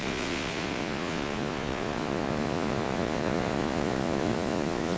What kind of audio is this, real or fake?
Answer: fake